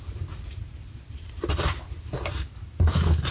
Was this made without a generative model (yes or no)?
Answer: yes